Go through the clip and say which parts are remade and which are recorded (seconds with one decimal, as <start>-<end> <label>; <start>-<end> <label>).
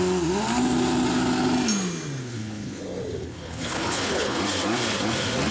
0.0-2.2 recorded; 2.2-2.8 remade; 2.8-3.2 recorded; 3.2-4.4 remade; 4.4-5.5 recorded